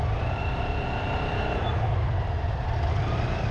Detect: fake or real real